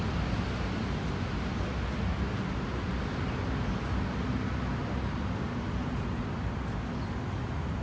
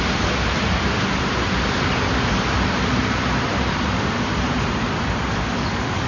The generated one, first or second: second